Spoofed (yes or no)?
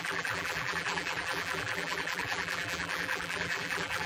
yes